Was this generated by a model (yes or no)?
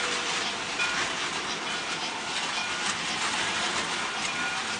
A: yes